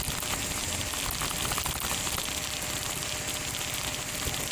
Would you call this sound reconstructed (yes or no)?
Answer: no